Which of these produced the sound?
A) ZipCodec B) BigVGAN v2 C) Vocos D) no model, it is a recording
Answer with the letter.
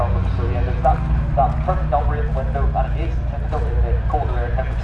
D